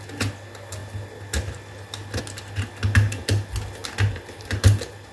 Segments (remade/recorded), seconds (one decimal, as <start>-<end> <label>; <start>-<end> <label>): 0.0-5.1 recorded